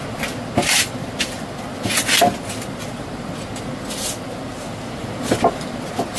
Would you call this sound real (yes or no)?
yes